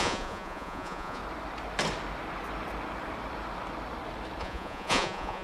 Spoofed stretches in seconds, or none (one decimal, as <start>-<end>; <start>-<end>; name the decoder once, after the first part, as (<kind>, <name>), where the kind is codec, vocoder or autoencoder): 0.0-1.2 (vocoder, Vocos); 4.4-5.4